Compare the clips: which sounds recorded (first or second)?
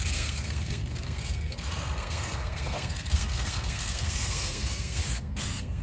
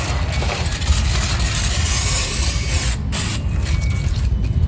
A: second